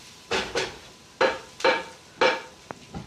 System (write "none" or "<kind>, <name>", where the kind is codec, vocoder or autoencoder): none